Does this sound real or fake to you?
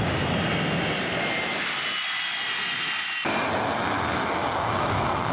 real